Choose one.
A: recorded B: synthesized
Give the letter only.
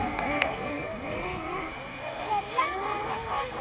B